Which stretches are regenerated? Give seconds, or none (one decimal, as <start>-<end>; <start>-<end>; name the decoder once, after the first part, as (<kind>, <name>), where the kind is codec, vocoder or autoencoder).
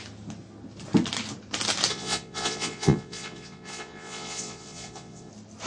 1.9-5.3 (vocoder, Vocos)